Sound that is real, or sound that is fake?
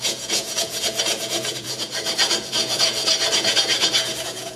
fake